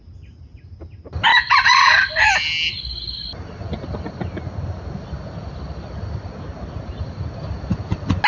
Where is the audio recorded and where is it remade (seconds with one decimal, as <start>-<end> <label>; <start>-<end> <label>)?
0.0-1.3 recorded; 1.3-2.3 remade; 2.3-8.3 recorded